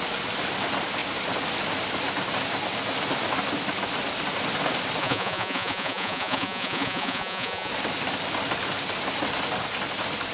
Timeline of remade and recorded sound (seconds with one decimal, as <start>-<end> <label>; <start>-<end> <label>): 0.0-5.0 recorded; 5.0-7.7 remade; 7.7-10.3 recorded